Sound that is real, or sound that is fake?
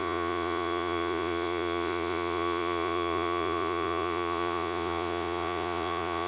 fake